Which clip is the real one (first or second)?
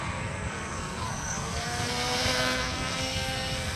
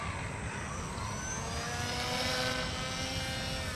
second